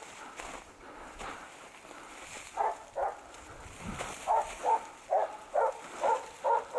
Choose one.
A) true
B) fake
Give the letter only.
A